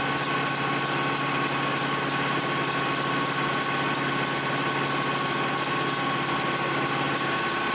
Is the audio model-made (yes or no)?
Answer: no